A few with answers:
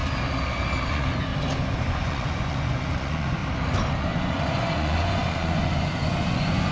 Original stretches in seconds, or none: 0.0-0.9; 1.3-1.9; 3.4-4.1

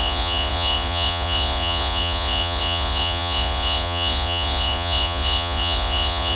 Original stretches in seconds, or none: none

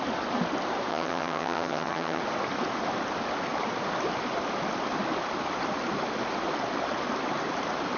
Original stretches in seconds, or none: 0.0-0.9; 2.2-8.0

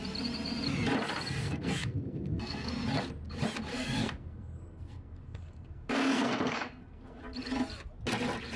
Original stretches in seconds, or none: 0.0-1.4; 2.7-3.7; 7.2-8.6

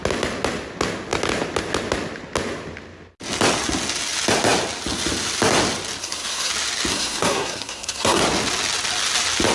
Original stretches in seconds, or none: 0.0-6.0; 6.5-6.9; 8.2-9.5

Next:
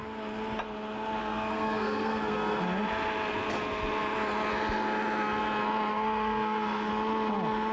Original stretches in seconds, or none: 0.0-1.2; 2.6-5.9; 6.9-7.7

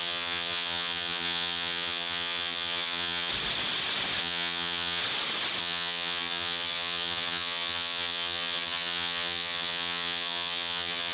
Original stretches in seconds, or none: 3.3-4.2; 5.0-5.6

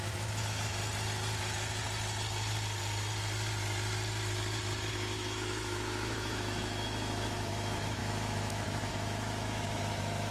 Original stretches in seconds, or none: 0.8-4.9